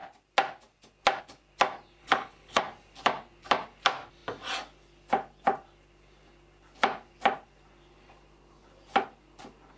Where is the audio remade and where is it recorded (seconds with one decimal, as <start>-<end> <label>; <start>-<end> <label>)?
0.0-2.0 recorded; 2.0-2.6 remade; 2.6-9.8 recorded